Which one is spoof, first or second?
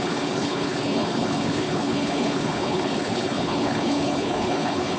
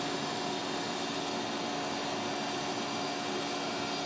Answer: first